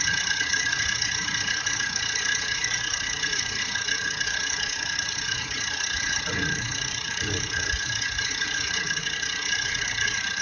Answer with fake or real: fake